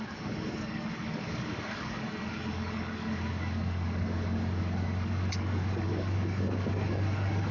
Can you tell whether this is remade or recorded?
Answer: remade